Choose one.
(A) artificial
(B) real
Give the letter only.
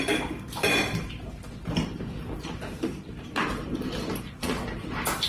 A